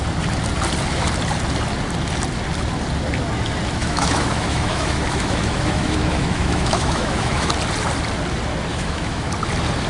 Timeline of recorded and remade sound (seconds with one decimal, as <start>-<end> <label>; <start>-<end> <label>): 0.0-3.8 recorded; 3.8-7.5 remade; 7.5-8.7 recorded; 8.7-9.3 remade; 9.3-9.9 recorded